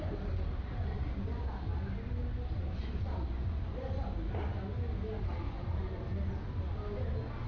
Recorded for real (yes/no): yes